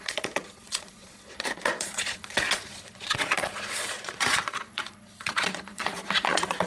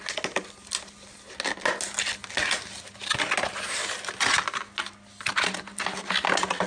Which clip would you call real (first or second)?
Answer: second